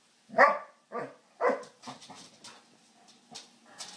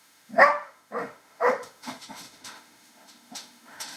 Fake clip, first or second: second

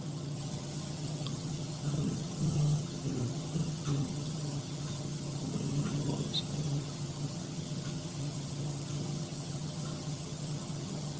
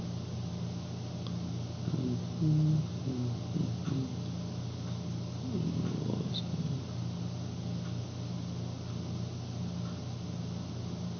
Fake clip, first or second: first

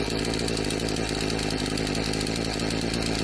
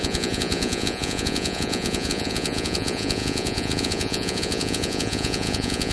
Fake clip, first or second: second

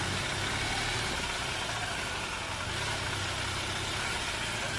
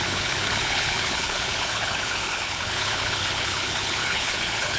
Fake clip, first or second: second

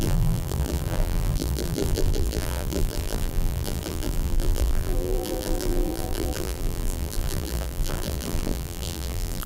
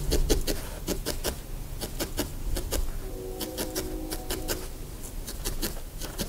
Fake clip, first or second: first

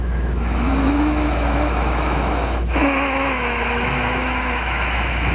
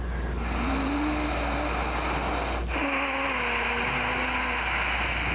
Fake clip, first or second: first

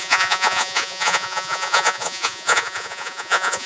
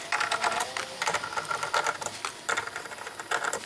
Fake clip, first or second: first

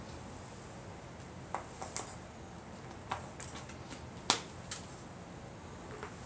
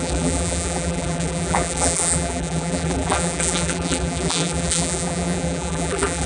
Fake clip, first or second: second